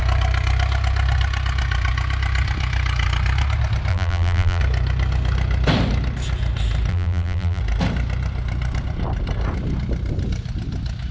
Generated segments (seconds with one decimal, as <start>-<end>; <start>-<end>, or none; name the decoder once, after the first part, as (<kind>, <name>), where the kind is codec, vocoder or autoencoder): 3.9-4.6 (vocoder, BigVGAN v2); 6.9-7.6